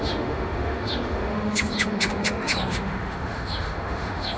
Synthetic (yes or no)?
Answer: yes